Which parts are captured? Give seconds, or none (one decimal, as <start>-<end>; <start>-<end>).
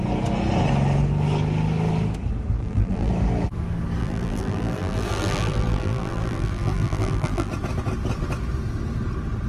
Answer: 0.0-2.6; 3.1-4.0; 7.5-9.5